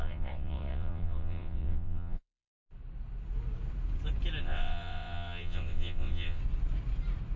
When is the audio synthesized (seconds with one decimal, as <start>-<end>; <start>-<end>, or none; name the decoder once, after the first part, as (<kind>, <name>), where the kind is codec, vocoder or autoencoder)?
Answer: 0.0-2.5 (vocoder, WaveNeXt); 4.4-6.4